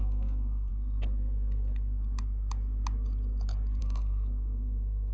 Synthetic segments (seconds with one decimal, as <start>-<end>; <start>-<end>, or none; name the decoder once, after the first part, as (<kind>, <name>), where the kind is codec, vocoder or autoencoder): 0.0-0.7 (codec, SNAC); 3.8-5.1